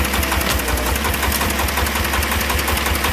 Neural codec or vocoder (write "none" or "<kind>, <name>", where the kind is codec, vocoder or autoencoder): none